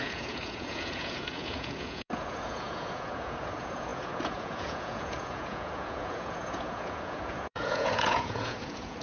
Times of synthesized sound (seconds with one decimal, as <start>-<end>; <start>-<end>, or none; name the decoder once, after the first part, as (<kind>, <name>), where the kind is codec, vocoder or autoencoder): 0.0-9.0 (vocoder, Vocos)